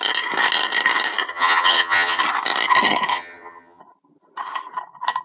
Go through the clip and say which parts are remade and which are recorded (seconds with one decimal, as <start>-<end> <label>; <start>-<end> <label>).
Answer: 0.0-1.3 recorded; 1.3-2.2 remade; 2.2-3.1 recorded; 3.1-3.8 remade; 3.8-5.2 recorded

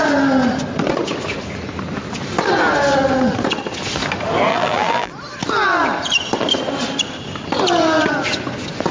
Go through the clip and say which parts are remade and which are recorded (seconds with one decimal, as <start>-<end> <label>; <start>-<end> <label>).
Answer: 0.0-4.5 recorded; 4.5-5.1 remade; 5.1-8.9 recorded

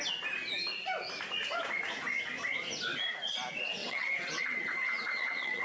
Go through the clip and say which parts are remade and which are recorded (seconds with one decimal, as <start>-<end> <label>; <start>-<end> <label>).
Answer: 0.0-3.8 recorded; 3.8-5.6 remade

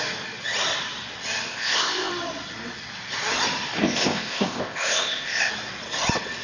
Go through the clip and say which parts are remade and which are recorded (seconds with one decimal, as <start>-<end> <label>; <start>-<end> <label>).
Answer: 0.0-1.5 recorded; 1.5-2.1 remade; 2.1-3.8 recorded; 3.8-5.5 remade; 5.5-6.4 recorded

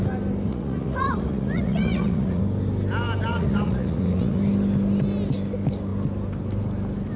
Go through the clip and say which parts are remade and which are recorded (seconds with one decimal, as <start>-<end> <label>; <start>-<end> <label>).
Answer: 0.0-0.5 recorded; 0.5-2.4 remade; 2.4-3.3 recorded; 3.3-4.4 remade; 4.4-7.2 recorded

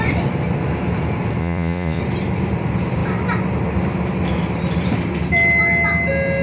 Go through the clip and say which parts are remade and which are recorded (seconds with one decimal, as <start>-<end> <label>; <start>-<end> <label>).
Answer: 0.0-1.4 recorded; 1.4-2.0 remade; 2.0-6.4 recorded